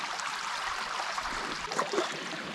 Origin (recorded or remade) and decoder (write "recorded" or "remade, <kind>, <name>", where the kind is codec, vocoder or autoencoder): recorded